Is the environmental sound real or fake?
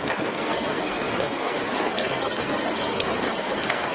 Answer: fake